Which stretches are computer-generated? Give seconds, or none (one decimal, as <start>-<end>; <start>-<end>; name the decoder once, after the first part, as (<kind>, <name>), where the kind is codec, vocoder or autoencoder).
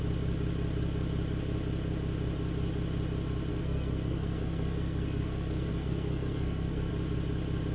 3.5-6.9 (codec, SNAC)